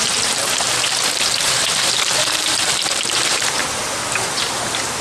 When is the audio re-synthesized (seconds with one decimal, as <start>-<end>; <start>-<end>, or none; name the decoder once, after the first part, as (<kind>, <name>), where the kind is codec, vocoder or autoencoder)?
0.0-0.4 (vocoder, BigVGAN v2); 1.3-3.6; 4.5-5.0